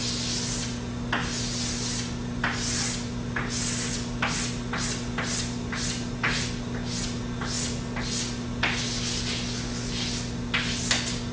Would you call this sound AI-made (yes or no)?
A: no